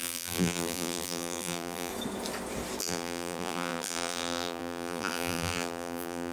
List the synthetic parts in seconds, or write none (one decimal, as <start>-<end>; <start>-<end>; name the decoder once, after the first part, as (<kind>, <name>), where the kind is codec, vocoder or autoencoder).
0.0-1.9 (vocoder, BigVGAN v2); 2.8-6.3